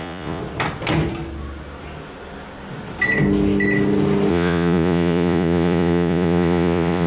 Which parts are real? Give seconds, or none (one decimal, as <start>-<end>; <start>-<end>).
0.4-4.3